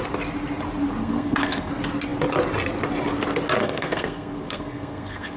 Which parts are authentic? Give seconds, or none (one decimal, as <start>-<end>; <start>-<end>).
0.0-1.0; 1.7-3.6